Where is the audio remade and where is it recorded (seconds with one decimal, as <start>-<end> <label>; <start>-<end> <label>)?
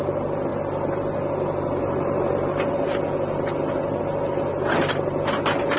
0.0-5.8 recorded